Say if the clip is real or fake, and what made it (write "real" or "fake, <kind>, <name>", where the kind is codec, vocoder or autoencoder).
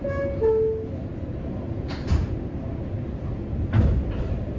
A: real